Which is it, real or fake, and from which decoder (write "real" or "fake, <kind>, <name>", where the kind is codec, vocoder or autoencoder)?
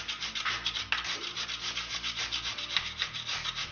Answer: real